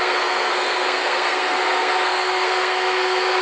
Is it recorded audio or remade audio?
remade